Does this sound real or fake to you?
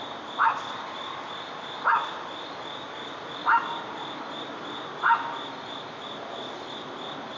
real